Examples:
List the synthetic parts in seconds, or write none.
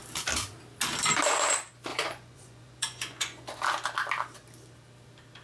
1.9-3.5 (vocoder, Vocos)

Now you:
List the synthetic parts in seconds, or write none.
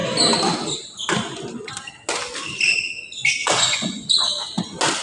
3.4-4.1 (vocoder, Vocos)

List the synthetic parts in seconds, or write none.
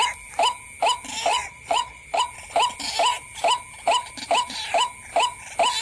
1.3-2.2 (vocoder, Vocos)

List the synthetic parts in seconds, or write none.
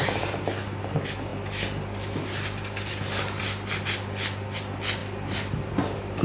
none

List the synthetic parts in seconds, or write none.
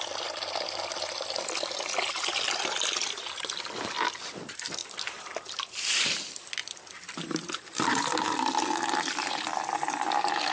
none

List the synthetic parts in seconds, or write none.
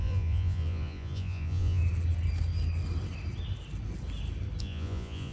0.0-1.8 (vocoder, Vocos); 4.6-5.3